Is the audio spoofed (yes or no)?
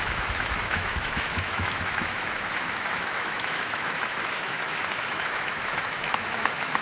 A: yes